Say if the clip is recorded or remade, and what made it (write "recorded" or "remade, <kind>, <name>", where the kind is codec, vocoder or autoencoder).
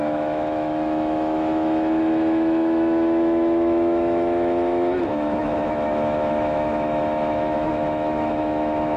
remade, autoencoder, DAC-VAE